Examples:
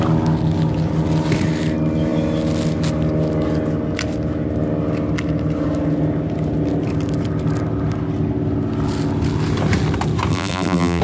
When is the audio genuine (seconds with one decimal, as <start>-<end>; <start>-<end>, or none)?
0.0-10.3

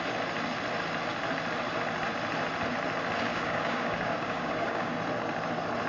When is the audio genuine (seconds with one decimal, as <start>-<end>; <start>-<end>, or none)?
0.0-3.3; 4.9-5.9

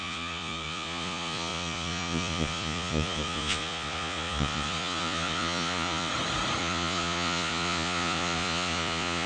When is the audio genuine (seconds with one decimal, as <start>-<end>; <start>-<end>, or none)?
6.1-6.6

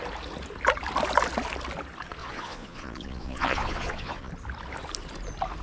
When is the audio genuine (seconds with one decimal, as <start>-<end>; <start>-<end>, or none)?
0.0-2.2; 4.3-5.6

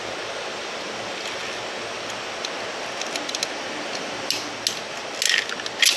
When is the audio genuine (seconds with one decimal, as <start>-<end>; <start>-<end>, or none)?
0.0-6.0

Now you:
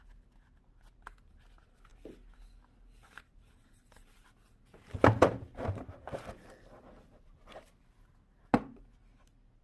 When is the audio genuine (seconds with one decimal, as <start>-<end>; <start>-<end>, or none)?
0.0-9.6

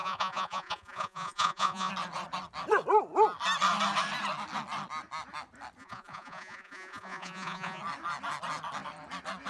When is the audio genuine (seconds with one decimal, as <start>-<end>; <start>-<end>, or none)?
1.9-5.8; 7.8-9.5